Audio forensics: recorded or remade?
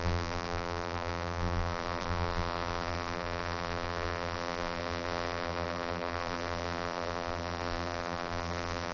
remade